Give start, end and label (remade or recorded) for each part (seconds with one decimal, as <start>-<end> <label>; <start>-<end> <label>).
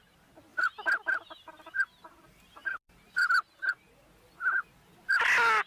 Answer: 0.0-5.7 recorded